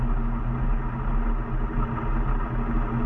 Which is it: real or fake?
real